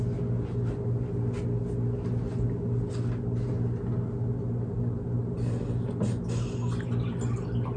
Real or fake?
real